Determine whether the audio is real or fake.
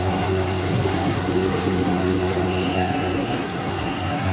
fake